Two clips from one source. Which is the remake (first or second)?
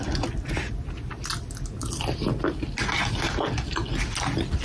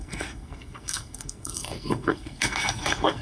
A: second